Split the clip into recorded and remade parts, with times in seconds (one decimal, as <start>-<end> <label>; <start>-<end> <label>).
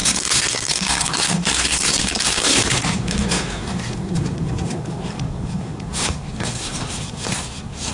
0.0-7.9 remade